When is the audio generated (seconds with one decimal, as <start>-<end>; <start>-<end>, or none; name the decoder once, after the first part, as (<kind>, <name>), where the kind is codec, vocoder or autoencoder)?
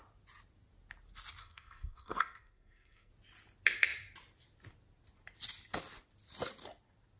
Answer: 1.4-3.1 (codec, SNAC)